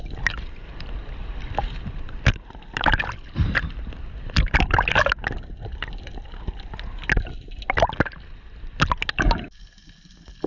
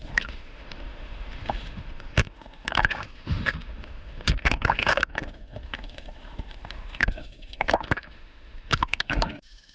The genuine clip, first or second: first